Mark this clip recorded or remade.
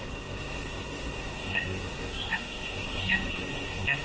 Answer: remade